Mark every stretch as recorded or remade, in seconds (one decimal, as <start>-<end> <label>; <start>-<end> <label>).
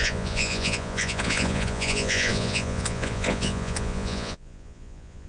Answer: 0.0-5.3 remade